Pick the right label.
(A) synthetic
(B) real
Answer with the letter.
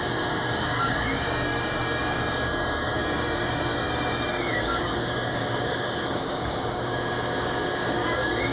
A